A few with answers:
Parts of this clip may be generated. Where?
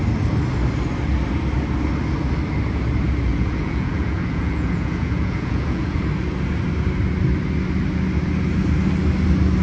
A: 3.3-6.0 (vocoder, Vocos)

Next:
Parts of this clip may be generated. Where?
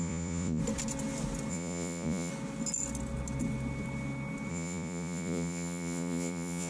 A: 0.0-0.6 (vocoder, Vocos); 1.5-2.3; 4.5-6.7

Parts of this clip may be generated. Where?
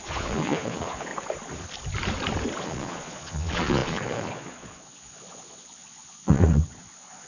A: 0.0-1.1 (vocoder, Vocos); 2.6-7.3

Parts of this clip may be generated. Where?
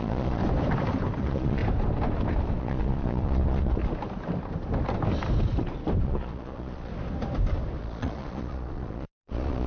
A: 0.0-0.4 (vocoder, Vocos); 1.2-1.6; 2.6-3.8; 6.0-6.9; 7.8-9.7